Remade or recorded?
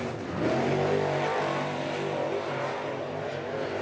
recorded